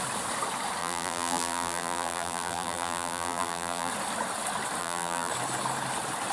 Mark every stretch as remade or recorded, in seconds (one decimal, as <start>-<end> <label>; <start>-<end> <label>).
0.0-0.8 recorded; 0.8-3.9 remade; 3.9-4.8 recorded; 4.8-5.3 remade; 5.3-6.3 recorded